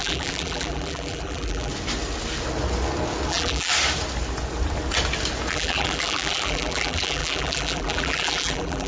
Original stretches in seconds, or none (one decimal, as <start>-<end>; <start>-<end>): 1.7-3.3; 3.7-5.5